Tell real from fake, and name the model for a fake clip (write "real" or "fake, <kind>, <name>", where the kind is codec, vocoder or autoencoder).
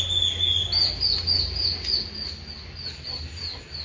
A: real